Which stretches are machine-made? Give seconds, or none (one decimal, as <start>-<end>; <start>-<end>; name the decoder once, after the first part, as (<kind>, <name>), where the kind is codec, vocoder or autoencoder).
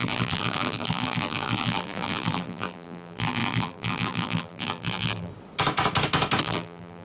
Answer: 0.0-5.3 (vocoder, BigVGAN v2); 6.4-7.0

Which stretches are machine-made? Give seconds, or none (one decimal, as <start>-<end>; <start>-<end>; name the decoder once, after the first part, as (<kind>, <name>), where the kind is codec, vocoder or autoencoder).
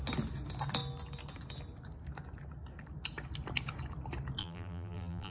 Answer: 4.4-5.3 (vocoder, BigVGAN v2)